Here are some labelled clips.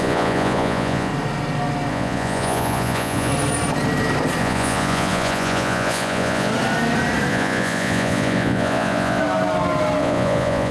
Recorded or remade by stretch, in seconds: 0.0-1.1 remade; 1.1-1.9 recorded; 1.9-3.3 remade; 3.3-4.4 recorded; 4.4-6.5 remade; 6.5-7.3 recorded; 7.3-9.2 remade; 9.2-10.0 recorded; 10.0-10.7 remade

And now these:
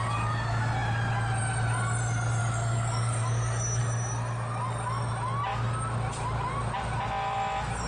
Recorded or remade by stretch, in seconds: 0.0-2.4 recorded; 2.4-3.8 remade; 3.8-7.9 recorded

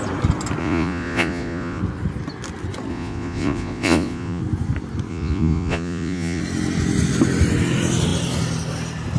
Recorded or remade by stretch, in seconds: 0.0-0.6 recorded; 0.6-1.8 remade; 1.8-2.9 recorded; 2.9-4.4 remade; 4.4-5.1 recorded; 5.1-6.4 remade; 6.4-9.2 recorded

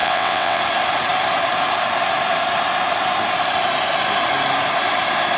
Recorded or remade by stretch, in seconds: 0.0-0.6 remade; 0.6-5.4 recorded

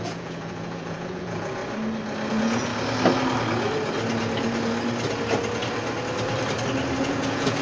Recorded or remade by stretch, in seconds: 0.0-1.6 remade; 1.6-2.3 recorded; 2.3-2.7 remade; 2.7-7.0 recorded; 7.0-7.6 remade

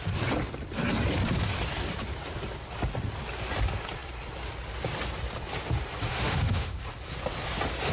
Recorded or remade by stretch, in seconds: 0.0-6.1 recorded; 6.1-6.8 remade; 6.8-7.9 recorded

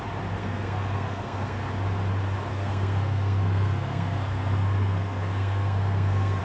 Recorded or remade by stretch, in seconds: 0.0-0.4 recorded; 0.4-1.7 remade; 1.7-2.5 recorded; 2.5-6.4 remade